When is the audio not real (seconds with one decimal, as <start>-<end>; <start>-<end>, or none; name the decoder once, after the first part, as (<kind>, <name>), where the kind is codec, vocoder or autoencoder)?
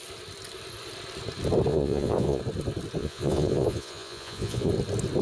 1.7-2.4 (vocoder, Vocos); 3.0-4.7